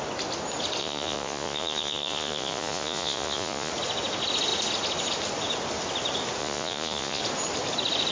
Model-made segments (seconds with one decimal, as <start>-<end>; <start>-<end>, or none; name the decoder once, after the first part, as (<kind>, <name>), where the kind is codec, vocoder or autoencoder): 0.8-3.7 (vocoder, Vocos); 6.4-7.2